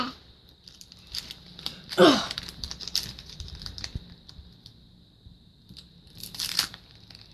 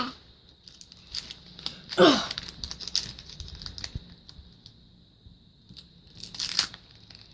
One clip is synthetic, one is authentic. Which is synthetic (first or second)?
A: first